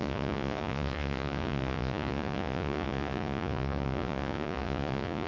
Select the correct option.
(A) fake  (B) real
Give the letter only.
A